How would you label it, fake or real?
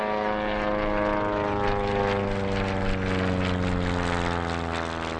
real